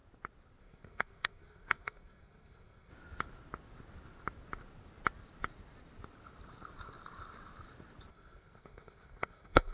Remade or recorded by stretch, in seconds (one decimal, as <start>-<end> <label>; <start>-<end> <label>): 0.0-0.6 recorded; 0.6-2.9 remade; 2.9-8.1 recorded; 8.1-9.7 remade